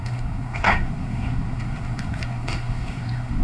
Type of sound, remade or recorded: remade